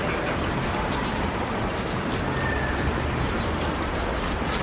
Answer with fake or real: real